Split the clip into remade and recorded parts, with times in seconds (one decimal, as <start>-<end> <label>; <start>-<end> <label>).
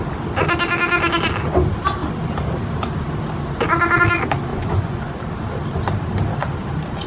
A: 0.0-4.5 recorded; 4.5-5.2 remade; 5.2-7.1 recorded